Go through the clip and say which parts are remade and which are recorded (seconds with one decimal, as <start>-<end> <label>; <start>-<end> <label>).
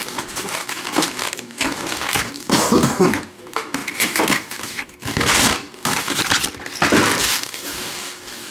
0.0-6.2 remade; 6.2-7.2 recorded; 7.2-8.5 remade